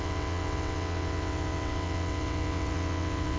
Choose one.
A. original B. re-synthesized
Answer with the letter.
B